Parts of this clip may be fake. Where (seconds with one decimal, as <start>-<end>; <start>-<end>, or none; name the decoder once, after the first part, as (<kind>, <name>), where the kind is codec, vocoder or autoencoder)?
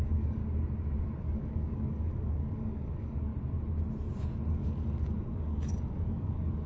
0.0-0.4 (codec, DAC); 1.2-3.3; 4.5-6.7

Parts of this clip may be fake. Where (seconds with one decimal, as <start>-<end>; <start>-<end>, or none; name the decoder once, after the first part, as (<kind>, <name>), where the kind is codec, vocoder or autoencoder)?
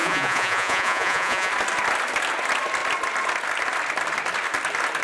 0.0-1.5 (vocoder, Vocos)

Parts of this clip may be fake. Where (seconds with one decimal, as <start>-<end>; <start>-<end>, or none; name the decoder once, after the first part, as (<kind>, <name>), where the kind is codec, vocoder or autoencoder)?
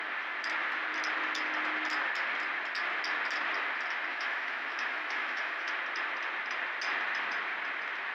4.1-5.7 (autoencoder, DAC-VAE)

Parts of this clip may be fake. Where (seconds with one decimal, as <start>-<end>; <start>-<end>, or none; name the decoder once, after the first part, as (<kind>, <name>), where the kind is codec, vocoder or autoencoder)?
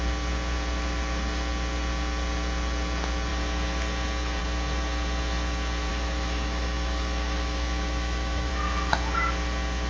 5.9-8.5 (autoencoder, DAC-VAE)